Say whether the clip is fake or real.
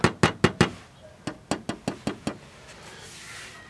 real